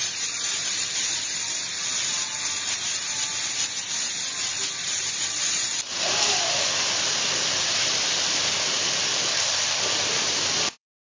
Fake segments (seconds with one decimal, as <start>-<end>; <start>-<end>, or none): 0.0-2.3; 6.0-11.0